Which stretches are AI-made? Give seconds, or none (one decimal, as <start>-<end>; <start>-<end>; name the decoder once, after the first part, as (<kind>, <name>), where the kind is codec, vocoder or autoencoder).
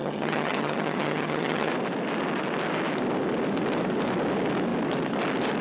0.0-1.7 (vocoder, HiFi-GAN)